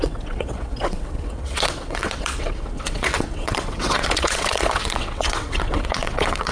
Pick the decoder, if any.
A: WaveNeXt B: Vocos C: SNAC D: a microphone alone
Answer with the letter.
A